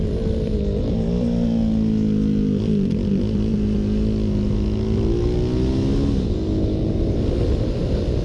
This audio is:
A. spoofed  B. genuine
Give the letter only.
B